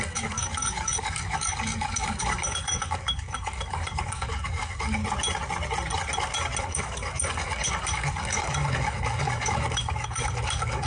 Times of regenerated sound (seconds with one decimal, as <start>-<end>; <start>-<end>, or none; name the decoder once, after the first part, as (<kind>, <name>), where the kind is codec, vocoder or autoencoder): 0.0-5.0 (codec, DAC); 6.6-10.9

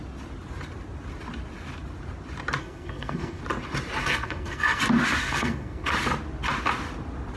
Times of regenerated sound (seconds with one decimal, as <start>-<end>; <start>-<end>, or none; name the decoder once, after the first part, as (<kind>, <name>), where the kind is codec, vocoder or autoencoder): 2.6-3.4 (codec, SNAC); 4.0-4.8; 5.2-5.9

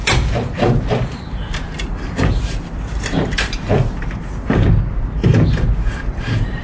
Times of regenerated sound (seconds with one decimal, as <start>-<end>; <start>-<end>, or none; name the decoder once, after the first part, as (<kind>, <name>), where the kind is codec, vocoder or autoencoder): 0.0-4.7 (vocoder, BigVGAN v2); 5.9-6.6

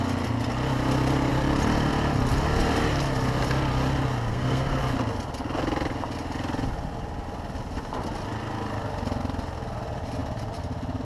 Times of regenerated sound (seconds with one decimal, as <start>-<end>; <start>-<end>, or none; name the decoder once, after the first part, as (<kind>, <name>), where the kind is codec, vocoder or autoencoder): 4.3-4.8 (codec, SNAC)

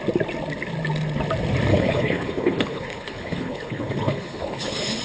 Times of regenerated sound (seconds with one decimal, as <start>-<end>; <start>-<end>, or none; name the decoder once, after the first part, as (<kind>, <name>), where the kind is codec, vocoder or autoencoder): 1.7-5.0 (codec, HILCodec)

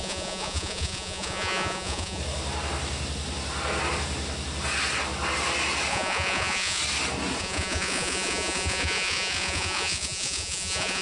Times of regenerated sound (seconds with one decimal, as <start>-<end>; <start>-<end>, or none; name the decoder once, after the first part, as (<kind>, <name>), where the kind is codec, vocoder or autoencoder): 0.0-2.2 (vocoder, Vocos); 5.9-6.8; 7.4-11.0

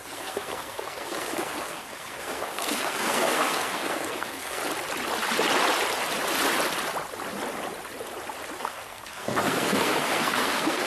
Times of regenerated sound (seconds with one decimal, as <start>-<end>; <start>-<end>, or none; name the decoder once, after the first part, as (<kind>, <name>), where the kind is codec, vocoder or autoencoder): 0.0-4.6 (codec, SNAC); 8.6-10.9

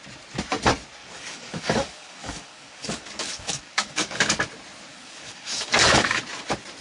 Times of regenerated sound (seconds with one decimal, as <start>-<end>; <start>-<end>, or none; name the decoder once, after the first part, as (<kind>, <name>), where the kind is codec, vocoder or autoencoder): 1.0-4.4 (codec, DAC); 4.9-6.2